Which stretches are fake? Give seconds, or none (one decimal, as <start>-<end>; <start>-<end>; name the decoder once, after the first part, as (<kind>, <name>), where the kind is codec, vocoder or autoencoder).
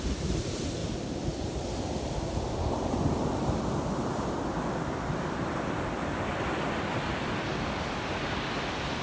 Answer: none